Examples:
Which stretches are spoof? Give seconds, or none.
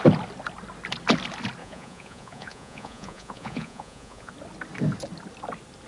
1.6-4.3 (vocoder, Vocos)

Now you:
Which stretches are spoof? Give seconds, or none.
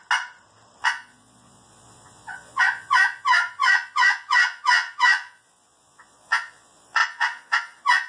0.8-8.1 (vocoder, Vocos)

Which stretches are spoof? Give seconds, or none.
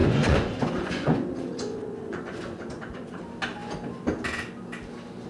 0.0-3.2 (vocoder, Vocos)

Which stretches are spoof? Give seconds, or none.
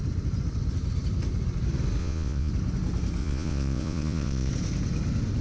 2.0-2.5 (vocoder, Vocos); 3.2-4.5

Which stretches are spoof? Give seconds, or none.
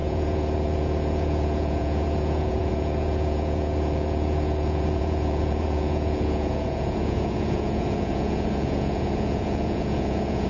0.0-10.5 (vocoder, Vocos)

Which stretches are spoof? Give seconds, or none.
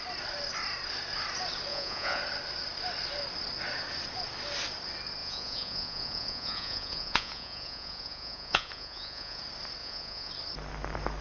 1.7-2.2 (vocoder, Vocos); 5.2-9.4; 9.8-10.3